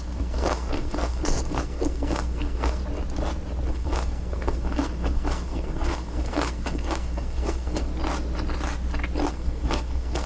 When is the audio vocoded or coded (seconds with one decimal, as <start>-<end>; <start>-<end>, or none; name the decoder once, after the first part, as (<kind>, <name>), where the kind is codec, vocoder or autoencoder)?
0.0-2.8 (codec, SNAC); 3.7-7.9; 9.3-10.3